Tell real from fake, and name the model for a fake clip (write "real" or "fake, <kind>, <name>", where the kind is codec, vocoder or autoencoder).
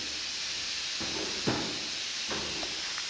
real